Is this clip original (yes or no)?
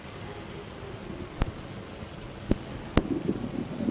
yes